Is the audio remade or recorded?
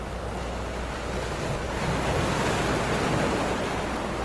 recorded